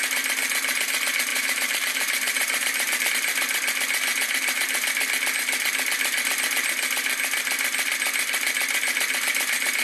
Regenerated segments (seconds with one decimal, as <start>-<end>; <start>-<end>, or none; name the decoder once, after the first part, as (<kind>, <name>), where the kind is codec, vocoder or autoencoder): 1.3-3.1 (vocoder, BigVGAN v2)